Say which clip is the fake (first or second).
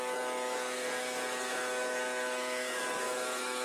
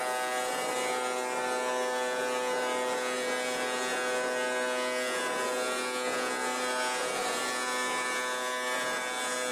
first